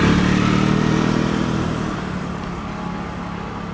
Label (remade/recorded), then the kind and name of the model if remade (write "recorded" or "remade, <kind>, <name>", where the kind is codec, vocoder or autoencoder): recorded